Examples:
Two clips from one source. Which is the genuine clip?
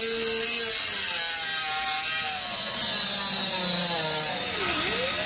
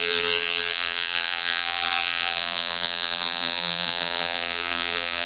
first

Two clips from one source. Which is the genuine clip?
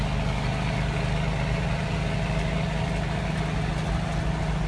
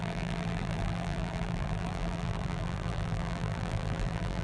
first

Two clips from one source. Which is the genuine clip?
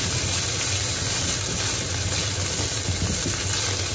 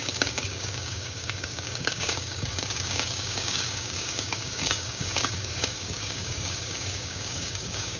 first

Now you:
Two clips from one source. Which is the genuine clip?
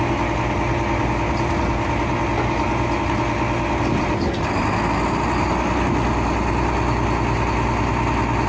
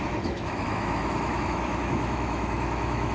first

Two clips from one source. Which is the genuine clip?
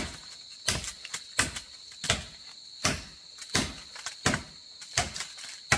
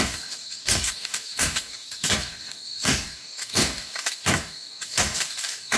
first